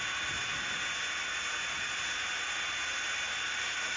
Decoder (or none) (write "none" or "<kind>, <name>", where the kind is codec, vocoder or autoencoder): none